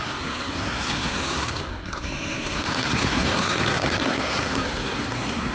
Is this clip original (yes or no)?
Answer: no